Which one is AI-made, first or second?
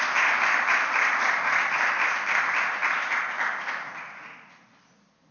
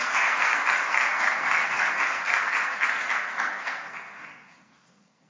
second